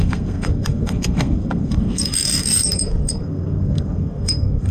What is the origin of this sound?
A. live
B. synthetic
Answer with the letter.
B